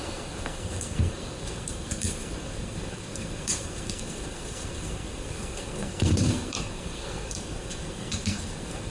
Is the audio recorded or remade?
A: remade